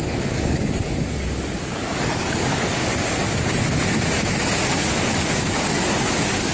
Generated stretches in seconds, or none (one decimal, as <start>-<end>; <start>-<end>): 0.0-2.8; 4.8-6.5